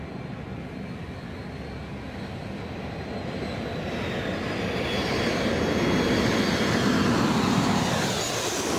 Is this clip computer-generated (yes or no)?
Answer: no